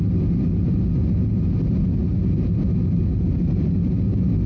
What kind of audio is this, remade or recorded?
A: recorded